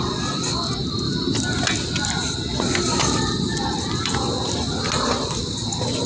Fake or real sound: real